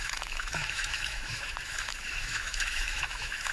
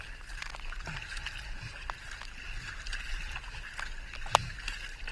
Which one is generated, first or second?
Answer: first